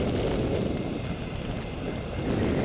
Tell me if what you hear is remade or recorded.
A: recorded